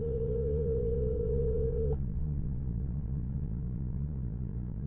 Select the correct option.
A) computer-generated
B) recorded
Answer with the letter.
A